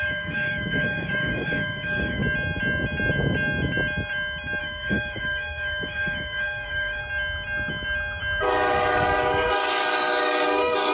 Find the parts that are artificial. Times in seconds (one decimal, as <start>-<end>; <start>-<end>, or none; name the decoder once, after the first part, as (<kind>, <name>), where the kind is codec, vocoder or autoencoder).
0.0-2.2 (codec, DAC); 4.6-7.0; 8.4-10.9